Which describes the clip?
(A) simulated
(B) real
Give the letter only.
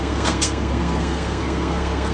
A